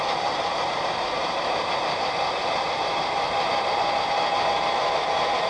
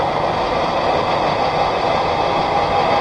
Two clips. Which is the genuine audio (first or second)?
second